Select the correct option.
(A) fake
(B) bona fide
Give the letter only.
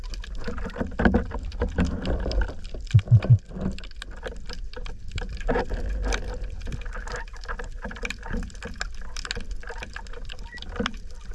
B